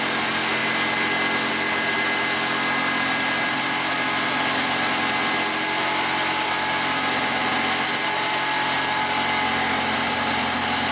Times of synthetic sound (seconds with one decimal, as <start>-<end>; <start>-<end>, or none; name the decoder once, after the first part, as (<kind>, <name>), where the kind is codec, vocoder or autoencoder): none